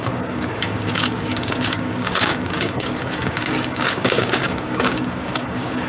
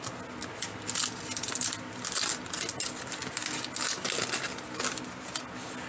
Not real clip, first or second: first